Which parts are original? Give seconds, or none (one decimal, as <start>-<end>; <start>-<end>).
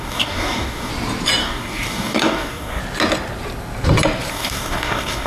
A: 0.9-1.4; 2.8-4.3